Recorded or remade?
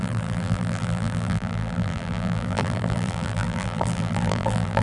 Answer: remade